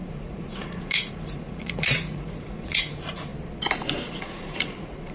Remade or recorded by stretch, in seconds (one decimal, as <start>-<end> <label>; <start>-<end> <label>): 0.0-3.3 remade; 3.3-4.1 recorded; 4.1-5.1 remade